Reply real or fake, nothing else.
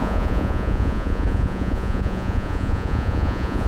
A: fake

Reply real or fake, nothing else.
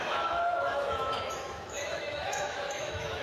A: fake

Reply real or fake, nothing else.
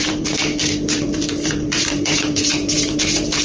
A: fake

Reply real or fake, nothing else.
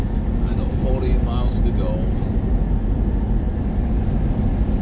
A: real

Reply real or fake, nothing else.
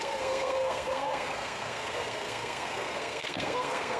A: fake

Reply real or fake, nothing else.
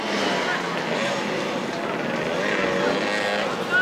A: real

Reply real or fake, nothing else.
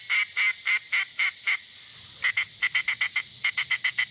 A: real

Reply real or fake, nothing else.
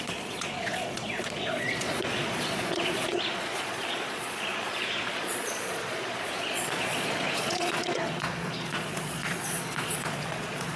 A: fake